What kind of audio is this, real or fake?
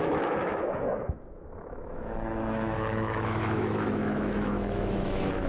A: fake